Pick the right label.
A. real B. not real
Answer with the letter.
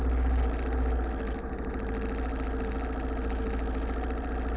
A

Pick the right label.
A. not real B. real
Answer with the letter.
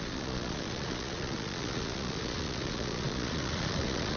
A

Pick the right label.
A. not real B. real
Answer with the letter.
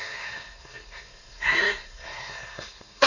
A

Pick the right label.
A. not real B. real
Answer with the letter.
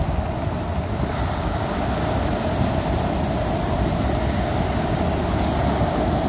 B